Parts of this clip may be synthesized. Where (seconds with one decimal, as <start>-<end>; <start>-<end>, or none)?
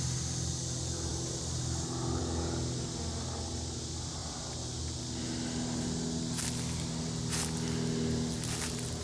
none